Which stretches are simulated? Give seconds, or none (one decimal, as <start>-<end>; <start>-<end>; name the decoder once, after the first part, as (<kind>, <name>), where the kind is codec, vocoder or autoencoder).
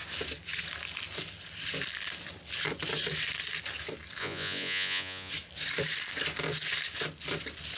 4.2-5.3 (vocoder, Vocos)